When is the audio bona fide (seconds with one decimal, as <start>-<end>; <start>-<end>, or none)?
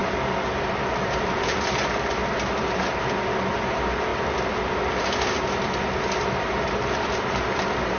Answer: 0.0-8.0